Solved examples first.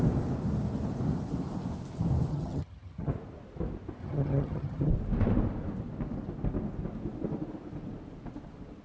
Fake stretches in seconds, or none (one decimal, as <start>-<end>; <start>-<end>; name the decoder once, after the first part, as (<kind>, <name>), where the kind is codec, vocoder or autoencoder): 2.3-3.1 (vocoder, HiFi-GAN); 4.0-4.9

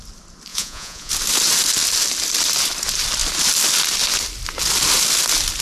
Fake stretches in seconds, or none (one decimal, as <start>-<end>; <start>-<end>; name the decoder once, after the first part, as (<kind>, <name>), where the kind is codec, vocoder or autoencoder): 0.5-1.1 (vocoder, Vocos)

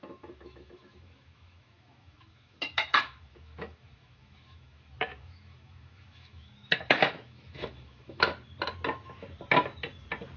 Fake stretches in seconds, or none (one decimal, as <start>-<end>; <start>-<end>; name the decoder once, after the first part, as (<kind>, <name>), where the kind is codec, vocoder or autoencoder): 0.0-8.3 (autoencoder, DAC-VAE)

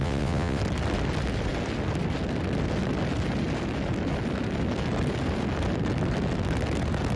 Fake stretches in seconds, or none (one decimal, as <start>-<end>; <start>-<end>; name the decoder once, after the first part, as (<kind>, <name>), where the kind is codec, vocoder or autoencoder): 0.0-0.6 (vocoder, WaveNeXt)